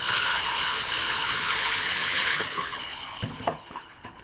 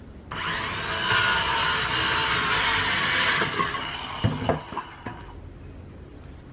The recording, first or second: second